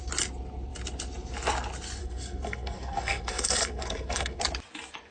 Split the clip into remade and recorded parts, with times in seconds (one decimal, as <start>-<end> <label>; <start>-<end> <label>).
0.0-2.0 recorded; 2.0-4.4 remade; 4.4-5.1 recorded